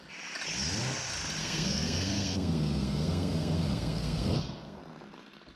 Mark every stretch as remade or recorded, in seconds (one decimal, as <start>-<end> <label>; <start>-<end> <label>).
0.0-1.4 recorded; 1.4-4.8 remade; 4.8-5.6 recorded